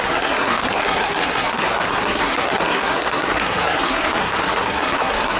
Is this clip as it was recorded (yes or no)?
no